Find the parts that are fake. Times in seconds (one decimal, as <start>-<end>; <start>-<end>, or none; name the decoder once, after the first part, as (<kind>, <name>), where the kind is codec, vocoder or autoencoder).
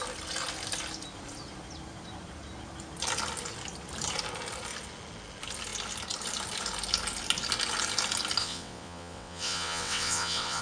8.4-10.6 (vocoder, WaveNeXt)